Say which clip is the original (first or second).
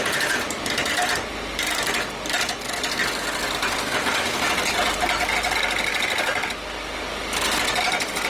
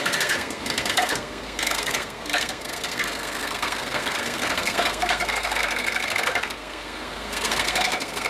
first